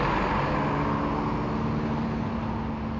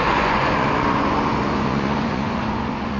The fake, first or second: second